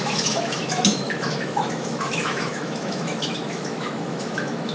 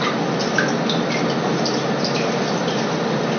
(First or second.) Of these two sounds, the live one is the second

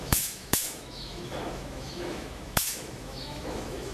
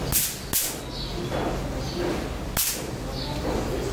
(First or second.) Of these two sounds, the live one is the second